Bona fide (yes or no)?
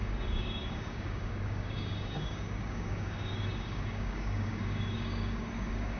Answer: no